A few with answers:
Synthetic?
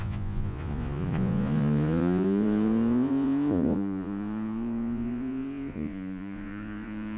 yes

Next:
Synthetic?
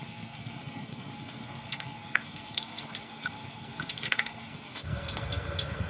yes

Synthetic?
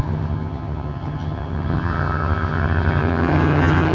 yes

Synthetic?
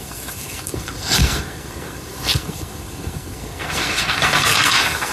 yes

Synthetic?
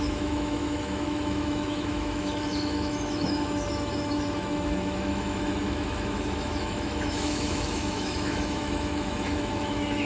yes